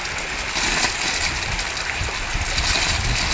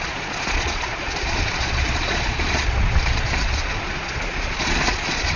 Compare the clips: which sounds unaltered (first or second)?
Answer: first